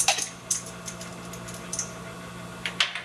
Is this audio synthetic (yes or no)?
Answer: no